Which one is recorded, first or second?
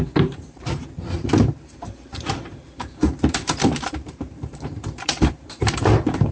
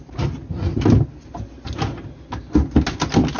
second